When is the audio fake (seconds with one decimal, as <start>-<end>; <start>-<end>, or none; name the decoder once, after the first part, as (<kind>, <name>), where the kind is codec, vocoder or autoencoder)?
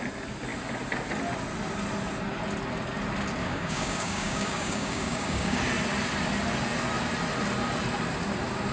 3.4-5.6 (codec, DAC)